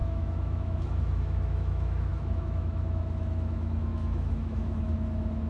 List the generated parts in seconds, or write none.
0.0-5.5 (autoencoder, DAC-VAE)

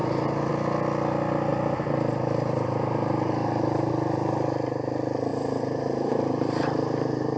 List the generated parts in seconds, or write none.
0.0-0.5 (vocoder, BigVGAN v2); 1.5-3.9; 5.3-7.4

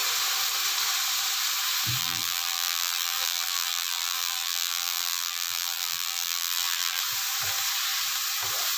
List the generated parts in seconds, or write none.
2.0-7.0 (vocoder, BigVGAN v2)

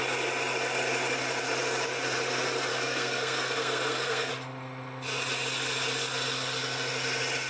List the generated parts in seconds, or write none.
2.7-4.3 (codec, SNAC)

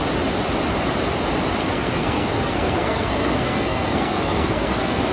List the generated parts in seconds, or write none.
1.6-5.1 (codec, SNAC)

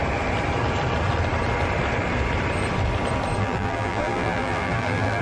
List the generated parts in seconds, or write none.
3.4-5.2 (vocoder, BigVGAN v2)